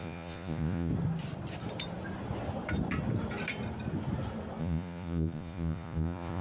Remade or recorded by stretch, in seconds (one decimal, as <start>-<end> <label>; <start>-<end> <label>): 0.0-0.9 remade; 0.9-4.6 recorded; 4.6-6.4 remade